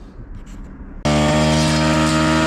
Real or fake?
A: real